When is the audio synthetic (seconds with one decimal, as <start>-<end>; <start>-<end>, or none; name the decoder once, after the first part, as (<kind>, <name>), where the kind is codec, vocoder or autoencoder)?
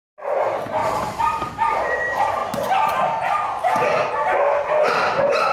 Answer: none